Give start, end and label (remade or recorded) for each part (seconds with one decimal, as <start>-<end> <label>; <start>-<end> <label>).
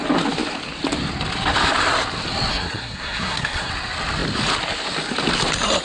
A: 0.0-2.5 recorded; 2.5-3.7 remade; 3.7-5.8 recorded